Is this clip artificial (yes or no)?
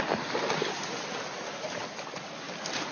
no